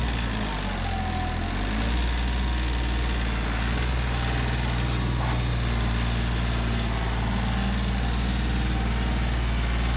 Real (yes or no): yes